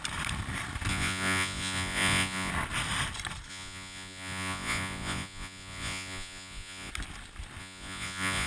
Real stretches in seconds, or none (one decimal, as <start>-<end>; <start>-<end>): 0.0-0.9; 2.5-3.5; 6.9-7.6